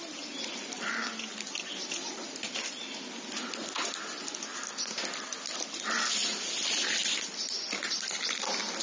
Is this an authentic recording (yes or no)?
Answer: yes